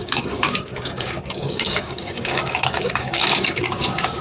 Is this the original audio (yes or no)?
no